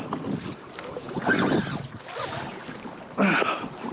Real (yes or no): yes